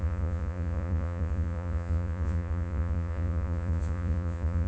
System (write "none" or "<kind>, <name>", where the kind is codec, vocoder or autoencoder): vocoder, Vocos